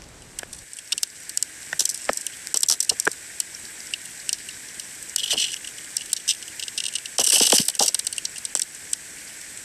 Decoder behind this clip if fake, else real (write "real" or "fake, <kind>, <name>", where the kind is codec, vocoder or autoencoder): real